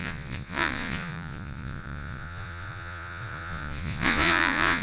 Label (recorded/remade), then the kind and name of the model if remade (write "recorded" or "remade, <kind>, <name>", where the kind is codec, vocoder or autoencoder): remade, vocoder, Vocos